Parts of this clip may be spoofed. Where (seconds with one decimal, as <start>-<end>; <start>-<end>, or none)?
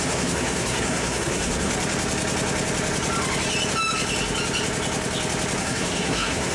0.0-1.7; 5.6-6.5